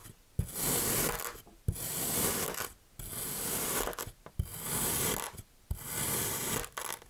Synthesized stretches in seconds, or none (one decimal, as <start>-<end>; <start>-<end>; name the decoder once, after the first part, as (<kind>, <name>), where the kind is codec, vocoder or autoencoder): none